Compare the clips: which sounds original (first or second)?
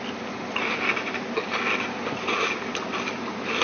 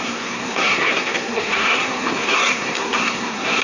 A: first